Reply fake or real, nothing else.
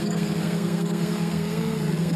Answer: fake